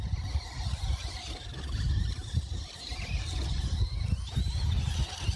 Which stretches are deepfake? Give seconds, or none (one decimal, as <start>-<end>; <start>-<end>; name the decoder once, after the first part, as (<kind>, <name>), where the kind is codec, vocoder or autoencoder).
none